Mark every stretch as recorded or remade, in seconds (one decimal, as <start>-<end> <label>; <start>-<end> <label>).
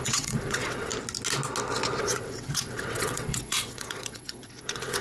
0.0-0.9 remade; 0.9-2.0 recorded; 2.0-5.0 remade